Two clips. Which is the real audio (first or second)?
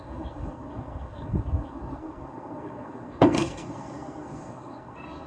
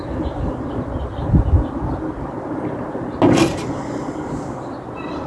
second